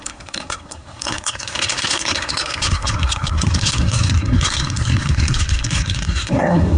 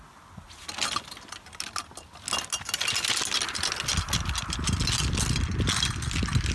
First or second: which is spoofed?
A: first